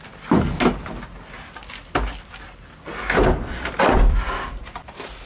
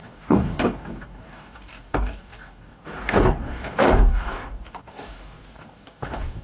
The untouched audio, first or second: first